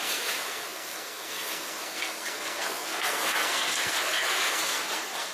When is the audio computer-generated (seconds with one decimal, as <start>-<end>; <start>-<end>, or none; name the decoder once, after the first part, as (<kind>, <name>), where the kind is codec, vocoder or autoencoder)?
0.0-5.3 (codec, SNAC)